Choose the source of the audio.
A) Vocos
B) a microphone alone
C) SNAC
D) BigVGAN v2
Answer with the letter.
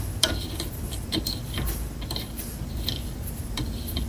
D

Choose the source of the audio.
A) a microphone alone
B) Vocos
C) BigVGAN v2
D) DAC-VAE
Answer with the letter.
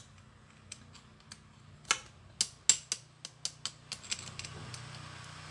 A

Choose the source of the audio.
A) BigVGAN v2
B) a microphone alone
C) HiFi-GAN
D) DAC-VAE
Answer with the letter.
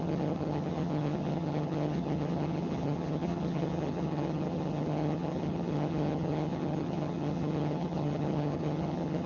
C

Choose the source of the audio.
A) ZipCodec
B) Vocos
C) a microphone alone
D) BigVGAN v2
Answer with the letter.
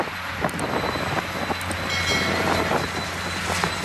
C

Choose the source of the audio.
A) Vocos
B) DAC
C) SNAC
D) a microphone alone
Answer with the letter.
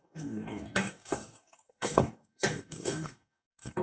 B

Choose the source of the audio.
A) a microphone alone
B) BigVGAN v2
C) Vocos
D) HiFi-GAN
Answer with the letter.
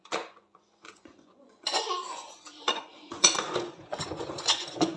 C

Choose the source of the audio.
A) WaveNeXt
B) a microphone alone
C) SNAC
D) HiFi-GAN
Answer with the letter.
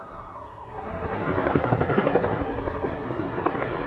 C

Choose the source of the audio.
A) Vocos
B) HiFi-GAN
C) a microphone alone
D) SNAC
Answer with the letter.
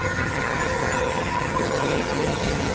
B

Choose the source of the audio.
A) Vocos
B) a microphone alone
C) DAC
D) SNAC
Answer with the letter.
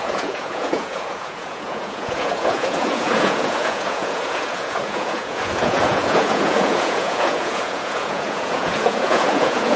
A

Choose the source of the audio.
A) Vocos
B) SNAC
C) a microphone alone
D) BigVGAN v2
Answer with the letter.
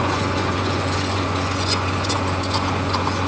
A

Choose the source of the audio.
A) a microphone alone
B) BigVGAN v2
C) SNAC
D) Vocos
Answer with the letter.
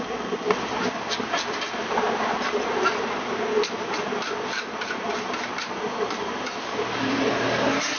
B